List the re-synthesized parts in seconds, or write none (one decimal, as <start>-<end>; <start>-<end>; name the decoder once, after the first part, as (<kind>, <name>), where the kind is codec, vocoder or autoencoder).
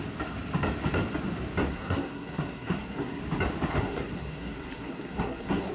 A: 1.7-3.2 (codec, SNAC); 3.7-5.7